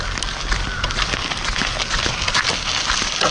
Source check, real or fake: real